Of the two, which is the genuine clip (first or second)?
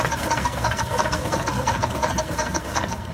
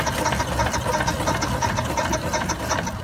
second